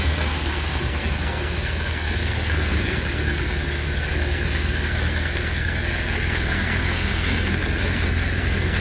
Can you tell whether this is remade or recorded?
remade